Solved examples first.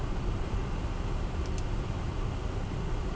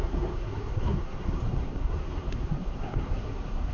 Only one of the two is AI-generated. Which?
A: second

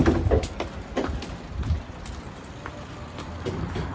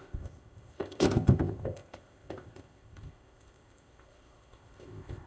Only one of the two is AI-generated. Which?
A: second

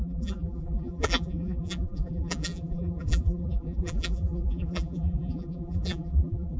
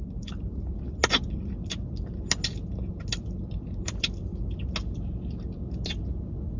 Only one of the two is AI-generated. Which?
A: first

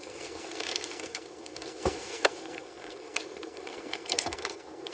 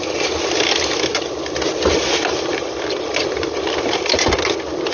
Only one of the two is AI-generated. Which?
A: first